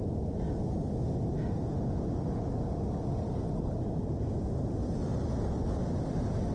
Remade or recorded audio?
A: recorded